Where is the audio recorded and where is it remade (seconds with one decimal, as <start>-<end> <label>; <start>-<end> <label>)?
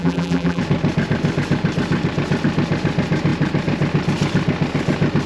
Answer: 0.0-0.6 remade; 0.6-5.3 recorded